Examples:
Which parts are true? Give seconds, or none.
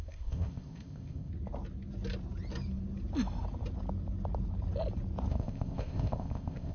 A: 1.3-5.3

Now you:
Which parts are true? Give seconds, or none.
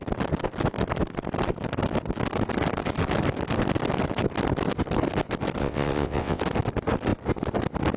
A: 0.0-5.6; 6.4-8.0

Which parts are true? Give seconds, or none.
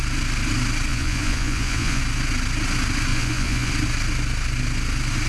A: 0.0-0.9; 2.0-3.1; 3.7-5.3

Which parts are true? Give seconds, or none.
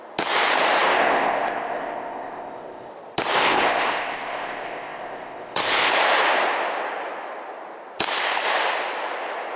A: 0.0-0.9; 2.9-3.4; 5.9-9.6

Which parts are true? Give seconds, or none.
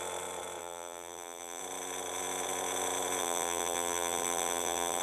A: 0.0-0.6; 1.6-3.2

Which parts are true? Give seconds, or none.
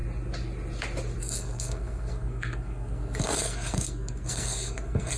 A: 0.0-1.2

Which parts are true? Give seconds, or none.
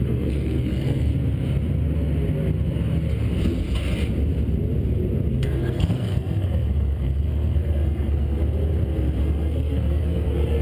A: 1.1-5.3; 8.4-9.2